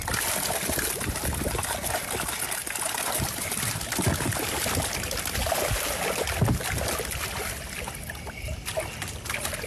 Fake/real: real